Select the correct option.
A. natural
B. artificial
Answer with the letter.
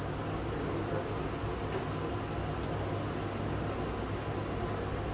A